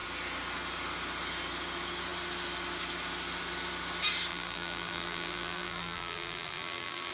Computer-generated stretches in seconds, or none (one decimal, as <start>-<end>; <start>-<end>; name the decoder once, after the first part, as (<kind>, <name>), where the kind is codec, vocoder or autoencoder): 4.3-7.1 (vocoder, BigVGAN v2)